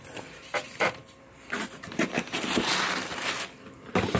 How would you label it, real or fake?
real